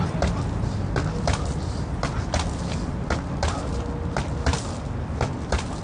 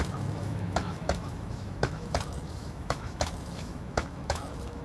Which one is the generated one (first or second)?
second